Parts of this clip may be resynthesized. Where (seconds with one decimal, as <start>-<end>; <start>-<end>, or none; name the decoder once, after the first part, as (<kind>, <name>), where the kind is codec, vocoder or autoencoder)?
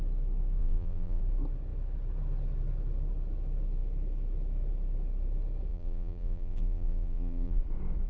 0.6-1.2 (vocoder, BigVGAN v2); 5.7-7.6